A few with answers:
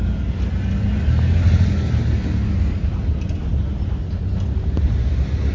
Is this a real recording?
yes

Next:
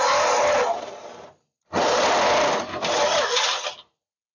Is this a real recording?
yes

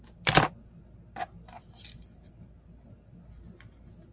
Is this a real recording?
yes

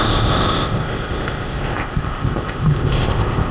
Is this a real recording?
no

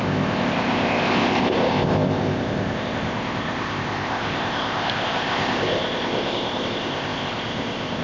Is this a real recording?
no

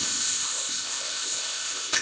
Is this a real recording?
no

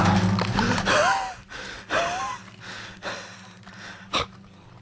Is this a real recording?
yes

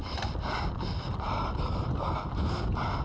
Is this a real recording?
yes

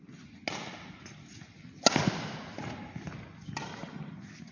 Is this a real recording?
yes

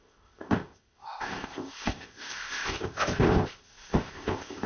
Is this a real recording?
no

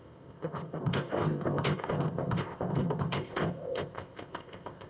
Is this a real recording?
no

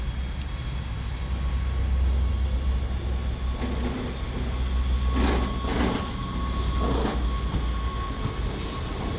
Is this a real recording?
yes